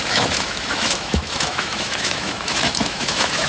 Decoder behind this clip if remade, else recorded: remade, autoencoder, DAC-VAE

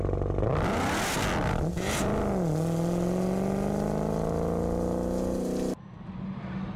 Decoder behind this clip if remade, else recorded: recorded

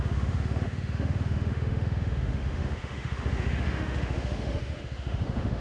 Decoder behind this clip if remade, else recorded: remade, autoencoder, DAC-VAE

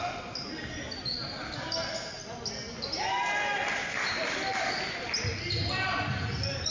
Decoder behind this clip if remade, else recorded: recorded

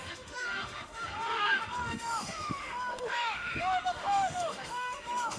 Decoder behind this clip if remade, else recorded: remade, autoencoder, DAC-VAE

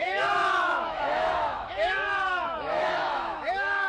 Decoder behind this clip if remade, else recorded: remade, autoencoder, DAC-VAE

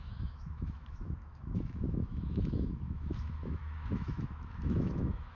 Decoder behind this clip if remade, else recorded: remade, autoencoder, DAC-VAE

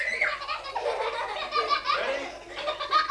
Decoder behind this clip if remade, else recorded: recorded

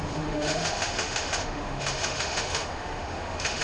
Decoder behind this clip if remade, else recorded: remade, autoencoder, DAC-VAE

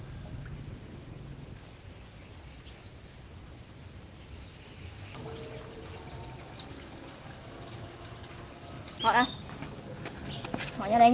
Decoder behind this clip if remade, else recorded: recorded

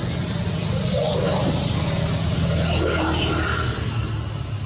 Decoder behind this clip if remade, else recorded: recorded